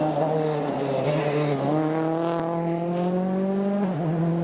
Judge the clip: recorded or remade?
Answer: recorded